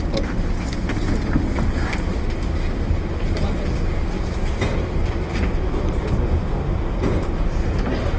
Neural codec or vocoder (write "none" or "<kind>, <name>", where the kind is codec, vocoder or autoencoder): none